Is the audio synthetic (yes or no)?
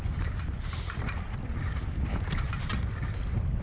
no